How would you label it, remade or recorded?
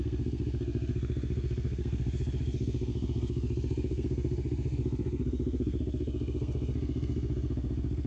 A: remade